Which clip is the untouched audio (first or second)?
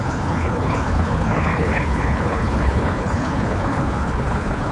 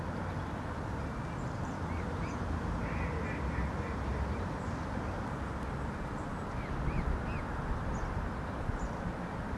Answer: second